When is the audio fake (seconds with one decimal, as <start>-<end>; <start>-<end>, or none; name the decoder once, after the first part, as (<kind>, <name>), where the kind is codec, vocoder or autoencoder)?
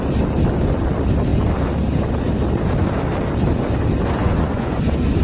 4.2-4.8 (vocoder, Vocos)